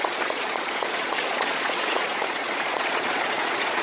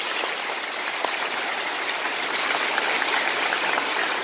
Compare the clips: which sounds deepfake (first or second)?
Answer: first